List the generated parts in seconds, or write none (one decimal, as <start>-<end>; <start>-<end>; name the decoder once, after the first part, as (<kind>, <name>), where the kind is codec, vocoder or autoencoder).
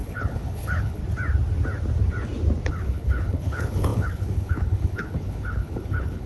0.0-1.0 (codec, HILCodec); 2.7-6.3